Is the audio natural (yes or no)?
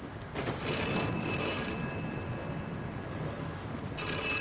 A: yes